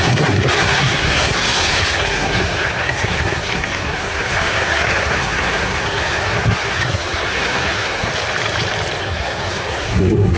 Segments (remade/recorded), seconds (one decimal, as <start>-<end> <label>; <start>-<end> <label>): 0.0-8.1 remade; 8.1-9.0 recorded; 9.0-10.4 remade